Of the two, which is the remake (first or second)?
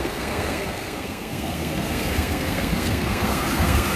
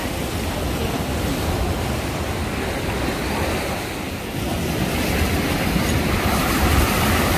first